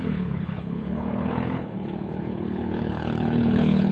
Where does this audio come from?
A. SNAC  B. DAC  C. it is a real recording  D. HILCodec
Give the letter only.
D